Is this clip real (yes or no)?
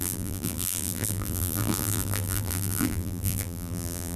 no